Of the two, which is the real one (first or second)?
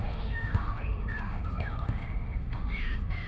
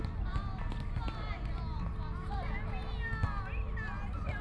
second